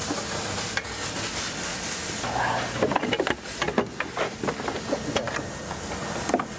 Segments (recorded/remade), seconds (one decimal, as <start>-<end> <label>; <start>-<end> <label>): 0.0-6.6 recorded